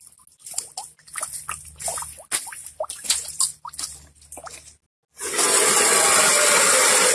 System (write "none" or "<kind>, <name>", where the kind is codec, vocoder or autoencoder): none